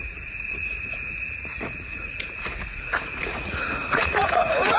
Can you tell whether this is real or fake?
fake